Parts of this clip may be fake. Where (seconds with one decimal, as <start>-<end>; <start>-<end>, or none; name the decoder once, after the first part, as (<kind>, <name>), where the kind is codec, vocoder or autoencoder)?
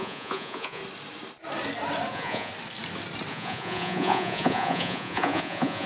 0.0-0.8 (vocoder, Vocos); 2.1-2.5; 3.3-5.9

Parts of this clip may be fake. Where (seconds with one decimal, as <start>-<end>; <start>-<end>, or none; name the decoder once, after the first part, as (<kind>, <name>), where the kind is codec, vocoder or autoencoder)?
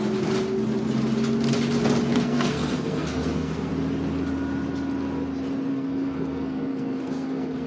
2.1-3.7 (codec, SNAC); 5.7-7.7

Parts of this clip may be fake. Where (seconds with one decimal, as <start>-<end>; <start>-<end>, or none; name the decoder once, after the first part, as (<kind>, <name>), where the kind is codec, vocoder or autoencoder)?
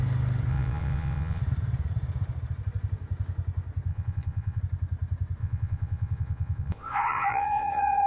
0.5-1.4 (vocoder, Vocos); 3.9-4.6; 5.4-8.1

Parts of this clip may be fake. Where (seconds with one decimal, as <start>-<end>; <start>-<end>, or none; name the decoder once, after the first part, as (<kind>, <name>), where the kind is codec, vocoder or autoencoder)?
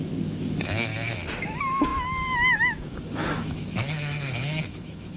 0.0-0.9 (autoencoder, DAC-VAE); 1.4-5.2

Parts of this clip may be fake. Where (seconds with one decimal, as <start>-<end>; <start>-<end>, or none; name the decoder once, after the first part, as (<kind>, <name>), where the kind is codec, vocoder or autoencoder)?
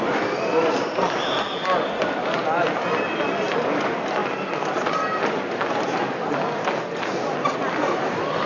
none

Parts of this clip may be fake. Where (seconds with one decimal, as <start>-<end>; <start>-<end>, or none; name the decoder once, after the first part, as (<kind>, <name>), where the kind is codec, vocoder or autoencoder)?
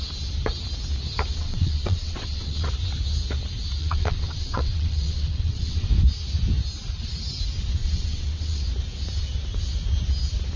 1.3-2.7 (vocoder, WaveNeXt); 3.8-5.9; 7.8-8.6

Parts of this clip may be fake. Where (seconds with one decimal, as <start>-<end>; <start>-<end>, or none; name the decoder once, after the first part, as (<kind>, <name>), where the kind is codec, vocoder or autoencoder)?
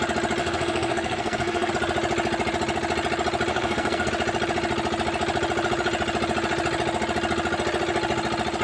0.4-1.7 (codec, SNAC); 3.5-4.1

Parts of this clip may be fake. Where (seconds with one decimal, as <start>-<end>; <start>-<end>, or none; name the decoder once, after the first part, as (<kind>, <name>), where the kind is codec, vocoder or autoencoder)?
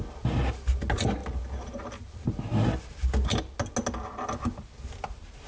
none